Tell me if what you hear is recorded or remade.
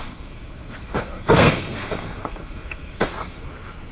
remade